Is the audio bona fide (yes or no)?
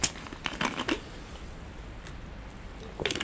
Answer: yes